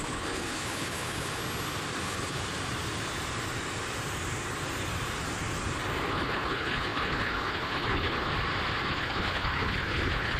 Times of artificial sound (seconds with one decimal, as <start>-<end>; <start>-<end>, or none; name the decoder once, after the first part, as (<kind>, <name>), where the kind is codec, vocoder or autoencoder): 0.0-1.4 (codec, HILCodec); 2.0-2.4; 6.1-8.3; 8.9-10.4